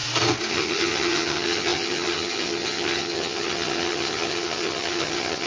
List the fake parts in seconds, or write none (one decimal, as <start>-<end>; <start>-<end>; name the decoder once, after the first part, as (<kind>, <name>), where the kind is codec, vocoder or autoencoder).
0.5-5.5 (vocoder, HiFi-GAN)